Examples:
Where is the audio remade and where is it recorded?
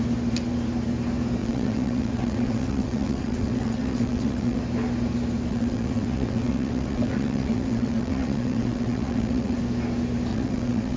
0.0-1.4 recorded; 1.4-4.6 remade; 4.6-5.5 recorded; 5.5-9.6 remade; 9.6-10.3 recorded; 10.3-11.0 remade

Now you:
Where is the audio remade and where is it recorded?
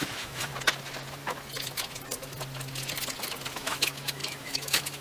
0.0-0.5 remade; 0.5-3.5 recorded; 3.5-5.0 remade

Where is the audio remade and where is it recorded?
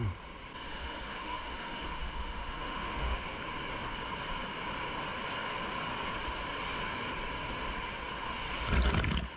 0.0-0.7 recorded; 0.7-3.4 remade; 3.4-9.4 recorded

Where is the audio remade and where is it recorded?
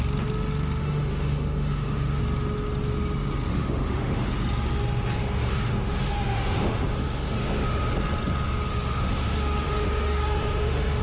0.0-0.8 recorded; 0.8-2.2 remade; 2.2-3.5 recorded; 3.5-4.3 remade; 4.3-5.2 recorded; 5.2-7.9 remade; 7.9-8.7 recorded; 8.7-11.0 remade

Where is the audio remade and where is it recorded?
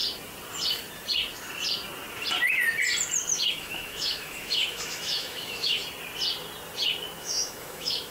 0.0-3.5 recorded; 3.5-5.8 remade; 5.8-7.2 recorded; 7.2-8.1 remade